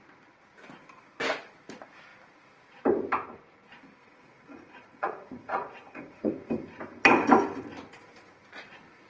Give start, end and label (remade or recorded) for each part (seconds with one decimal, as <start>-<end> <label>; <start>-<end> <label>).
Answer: 0.0-4.0 recorded; 4.0-6.3 remade; 6.3-9.1 recorded